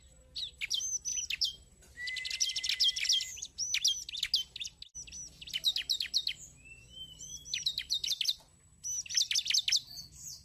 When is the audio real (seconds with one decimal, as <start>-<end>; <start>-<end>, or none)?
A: 0.0-1.1; 1.9-6.8; 8.2-10.4